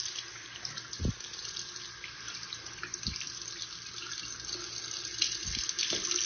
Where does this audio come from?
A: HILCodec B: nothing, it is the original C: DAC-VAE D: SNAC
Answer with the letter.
B